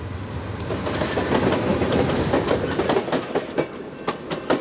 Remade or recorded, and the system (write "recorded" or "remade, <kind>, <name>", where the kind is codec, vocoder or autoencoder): recorded